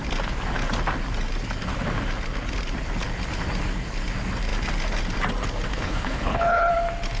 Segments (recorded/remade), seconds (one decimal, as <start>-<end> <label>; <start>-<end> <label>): 0.0-5.7 recorded; 5.7-6.7 remade; 6.7-7.2 recorded